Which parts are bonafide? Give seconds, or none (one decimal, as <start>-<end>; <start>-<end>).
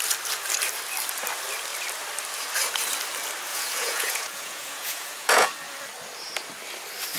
0.0-3.5; 5.5-7.2